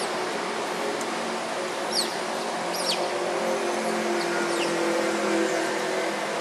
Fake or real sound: real